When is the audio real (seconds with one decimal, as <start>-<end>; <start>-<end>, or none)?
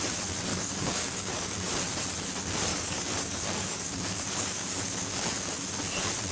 0.0-0.5; 1.7-2.7; 5.5-6.3